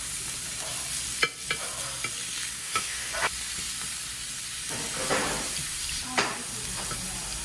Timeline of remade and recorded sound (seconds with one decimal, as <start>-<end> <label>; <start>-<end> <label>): 0.0-2.6 recorded; 2.6-3.1 remade; 3.1-7.4 recorded